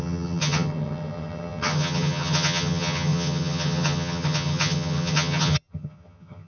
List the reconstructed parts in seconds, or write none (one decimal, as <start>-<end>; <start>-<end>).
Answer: 0.0-6.5